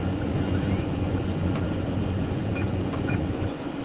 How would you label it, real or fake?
fake